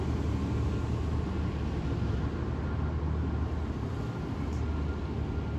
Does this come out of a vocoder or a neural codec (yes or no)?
no